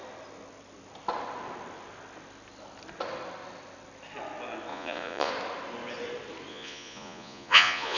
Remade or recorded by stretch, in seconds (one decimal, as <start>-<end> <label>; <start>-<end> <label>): 0.0-4.7 recorded; 4.7-5.3 remade; 5.3-6.5 recorded; 6.5-8.0 remade